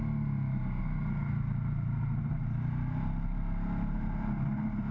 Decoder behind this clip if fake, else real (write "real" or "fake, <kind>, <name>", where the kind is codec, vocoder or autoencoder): real